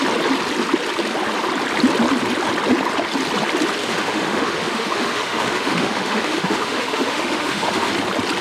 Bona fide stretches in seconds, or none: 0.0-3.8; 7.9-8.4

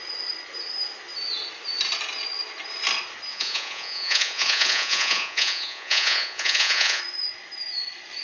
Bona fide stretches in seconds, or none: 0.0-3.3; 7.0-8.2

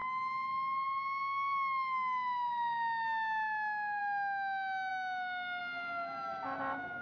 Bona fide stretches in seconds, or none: 0.0-7.0

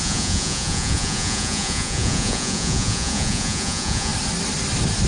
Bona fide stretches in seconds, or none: 4.1-5.1

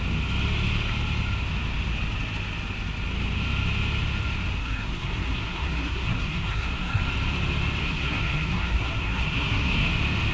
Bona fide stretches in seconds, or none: 0.0-4.6; 7.0-7.8; 9.9-10.3

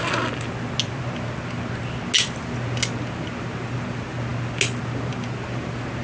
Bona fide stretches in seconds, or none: 0.0-6.0

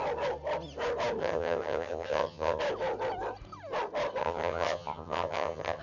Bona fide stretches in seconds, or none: 0.0-1.2; 2.6-4.2

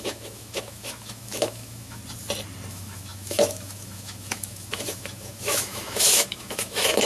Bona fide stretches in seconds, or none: 2.0-2.7